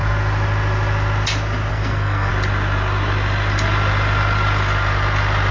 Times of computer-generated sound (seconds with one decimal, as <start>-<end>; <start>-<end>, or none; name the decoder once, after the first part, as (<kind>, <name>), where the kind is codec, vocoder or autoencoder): 1.7-2.3 (codec, SNAC)